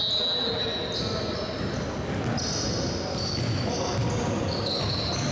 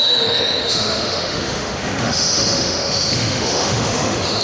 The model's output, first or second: second